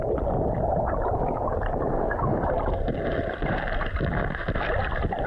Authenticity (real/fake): real